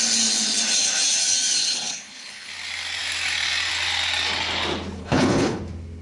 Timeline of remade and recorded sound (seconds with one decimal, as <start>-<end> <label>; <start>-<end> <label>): 0.0-1.6 recorded; 1.6-2.5 remade; 2.5-5.0 recorded; 5.0-5.6 remade; 5.6-6.0 recorded